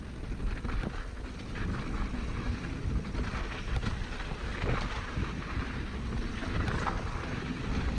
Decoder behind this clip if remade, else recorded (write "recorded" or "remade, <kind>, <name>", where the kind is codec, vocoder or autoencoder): recorded